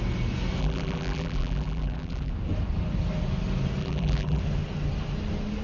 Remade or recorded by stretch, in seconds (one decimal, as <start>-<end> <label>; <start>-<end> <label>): 0.0-0.6 recorded; 0.6-2.3 remade; 2.3-3.8 recorded; 3.8-4.4 remade; 4.4-5.6 recorded